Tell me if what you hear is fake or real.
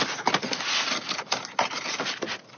real